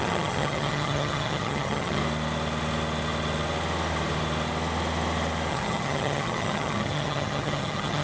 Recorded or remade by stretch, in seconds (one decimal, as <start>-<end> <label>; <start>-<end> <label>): 0.0-2.0 remade; 2.0-5.5 recorded; 5.5-8.0 remade